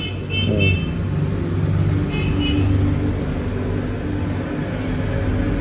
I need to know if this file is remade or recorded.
recorded